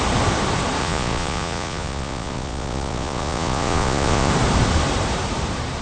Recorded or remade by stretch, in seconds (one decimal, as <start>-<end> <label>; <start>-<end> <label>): 0.0-0.8 recorded; 0.8-4.3 remade; 4.3-5.8 recorded